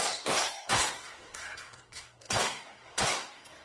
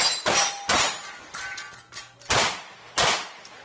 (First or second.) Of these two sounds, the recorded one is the second